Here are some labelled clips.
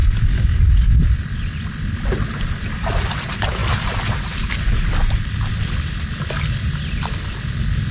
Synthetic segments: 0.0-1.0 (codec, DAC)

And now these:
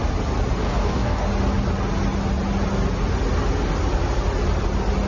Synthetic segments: 0.6-1.3 (codec, DAC)

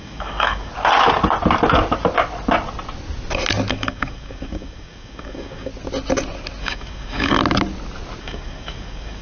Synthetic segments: 0.0-0.7 (codec, DAC); 3.7-5.7; 6.6-7.4; 8.2-9.2

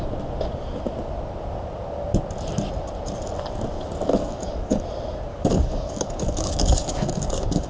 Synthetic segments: 4.1-4.8 (codec, DAC); 5.3-7.7

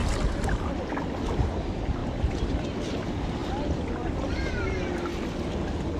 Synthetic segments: none